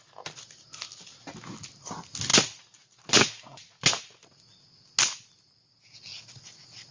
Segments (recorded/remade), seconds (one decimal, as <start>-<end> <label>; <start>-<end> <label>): 0.0-6.9 recorded